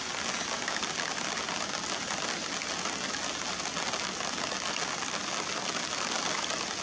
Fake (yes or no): no